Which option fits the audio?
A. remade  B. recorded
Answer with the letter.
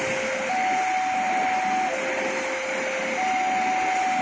B